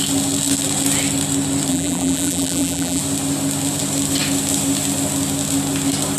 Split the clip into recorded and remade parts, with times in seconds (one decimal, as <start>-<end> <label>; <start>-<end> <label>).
0.0-1.7 recorded; 1.7-3.0 remade; 3.0-6.2 recorded